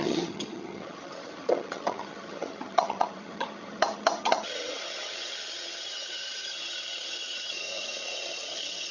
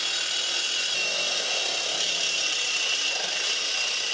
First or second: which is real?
second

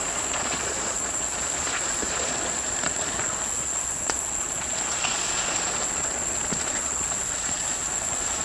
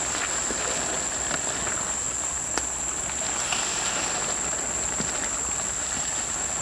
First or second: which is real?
second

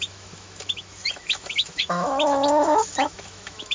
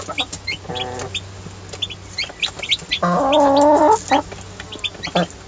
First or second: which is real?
second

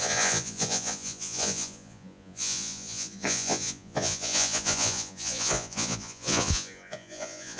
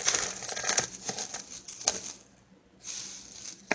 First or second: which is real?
second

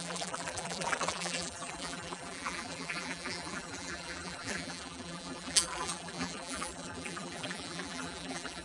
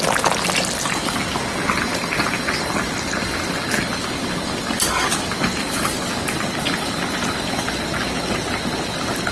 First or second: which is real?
second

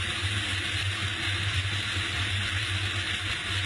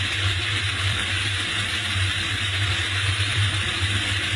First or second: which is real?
first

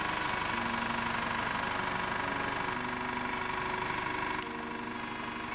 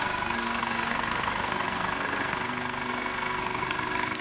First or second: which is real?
first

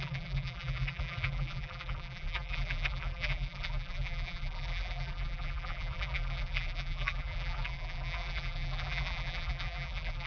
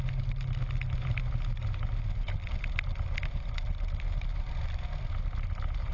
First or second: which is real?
second